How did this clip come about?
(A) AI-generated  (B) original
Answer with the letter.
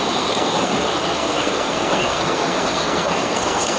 A